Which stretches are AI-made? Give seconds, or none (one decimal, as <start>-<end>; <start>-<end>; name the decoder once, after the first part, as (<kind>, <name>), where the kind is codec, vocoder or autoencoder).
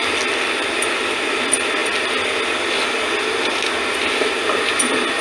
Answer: none